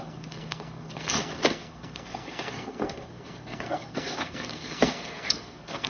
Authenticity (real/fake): fake